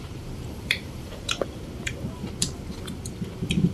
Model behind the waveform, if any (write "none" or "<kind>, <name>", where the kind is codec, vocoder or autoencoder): vocoder, BigVGAN v2